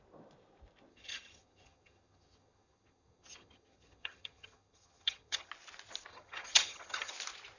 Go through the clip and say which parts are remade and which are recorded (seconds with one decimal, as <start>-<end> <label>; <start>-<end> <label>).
0.0-0.9 recorded; 0.9-5.5 remade; 5.5-6.1 recorded; 6.1-7.1 remade; 7.1-7.6 recorded